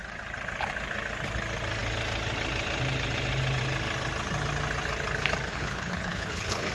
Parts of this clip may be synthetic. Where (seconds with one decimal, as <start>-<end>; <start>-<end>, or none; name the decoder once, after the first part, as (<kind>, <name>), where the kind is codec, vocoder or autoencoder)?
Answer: 5.5-6.7 (codec, HILCodec)